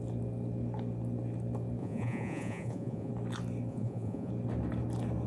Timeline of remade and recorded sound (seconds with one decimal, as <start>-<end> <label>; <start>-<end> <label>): 0.0-1.8 recorded; 1.8-3.1 remade; 3.1-3.7 recorded; 3.7-4.3 remade; 4.3-5.3 recorded